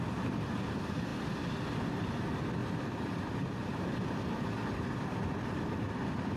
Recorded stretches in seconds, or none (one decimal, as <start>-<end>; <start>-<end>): 0.0-2.6